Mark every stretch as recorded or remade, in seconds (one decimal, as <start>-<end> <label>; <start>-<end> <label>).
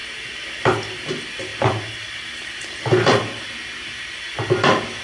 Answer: 0.0-1.5 recorded; 1.5-4.5 remade; 4.5-5.0 recorded